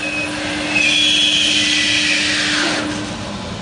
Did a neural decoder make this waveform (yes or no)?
no